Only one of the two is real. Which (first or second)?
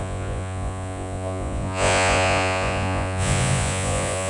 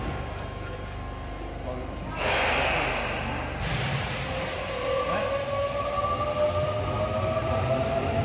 second